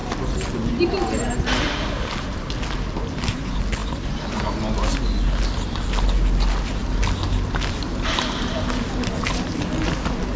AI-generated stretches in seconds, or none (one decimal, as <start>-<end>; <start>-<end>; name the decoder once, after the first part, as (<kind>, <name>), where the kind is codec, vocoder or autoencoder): none